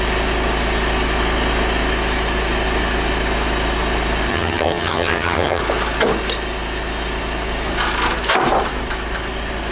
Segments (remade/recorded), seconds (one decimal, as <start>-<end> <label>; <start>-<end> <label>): 0.0-4.3 recorded; 4.3-5.6 remade; 5.6-9.7 recorded